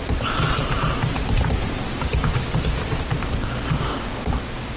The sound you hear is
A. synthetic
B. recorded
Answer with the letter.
B